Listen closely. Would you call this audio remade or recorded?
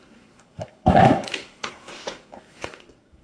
remade